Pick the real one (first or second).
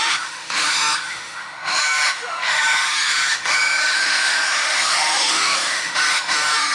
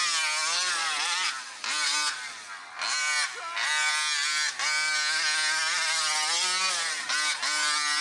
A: second